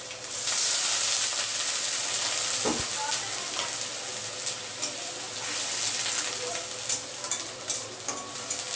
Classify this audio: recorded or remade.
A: recorded